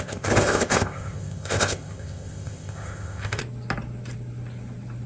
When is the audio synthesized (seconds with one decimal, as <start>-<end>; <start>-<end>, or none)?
0.0-3.4